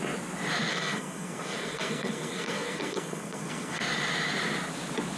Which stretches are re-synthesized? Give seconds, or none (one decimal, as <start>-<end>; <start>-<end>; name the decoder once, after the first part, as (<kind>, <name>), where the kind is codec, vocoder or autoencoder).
0.7-3.8 (codec, SNAC)